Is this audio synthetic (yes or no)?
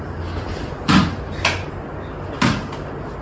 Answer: no